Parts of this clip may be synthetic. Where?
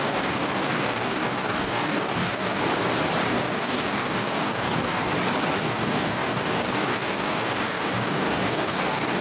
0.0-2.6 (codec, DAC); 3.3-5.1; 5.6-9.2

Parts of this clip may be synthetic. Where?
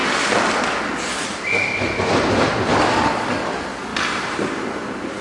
2.7-3.5 (codec, DAC)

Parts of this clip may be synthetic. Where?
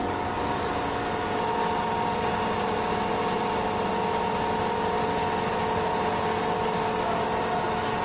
0.0-0.7 (codec, DAC)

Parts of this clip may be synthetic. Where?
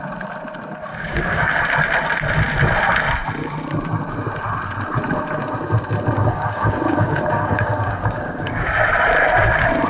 0.9-1.6 (codec, DAC); 6.2-8.7